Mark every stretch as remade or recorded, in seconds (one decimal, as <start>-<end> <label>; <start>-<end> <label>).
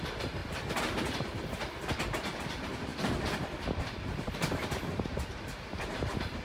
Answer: 0.0-0.4 remade; 0.4-2.2 recorded; 2.2-2.9 remade; 2.9-3.8 recorded; 3.8-6.4 remade